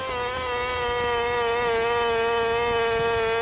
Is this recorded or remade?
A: recorded